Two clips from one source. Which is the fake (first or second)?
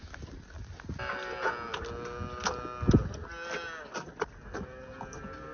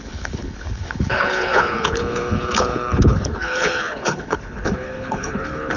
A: second